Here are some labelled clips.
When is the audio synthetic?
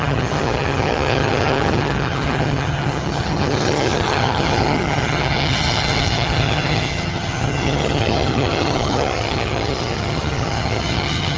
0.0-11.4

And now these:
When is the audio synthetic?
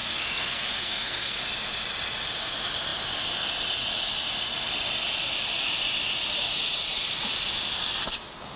0.0-1.4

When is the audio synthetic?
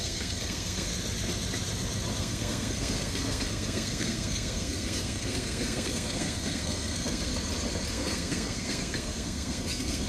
0.0-0.9; 2.2-7.3; 7.9-10.1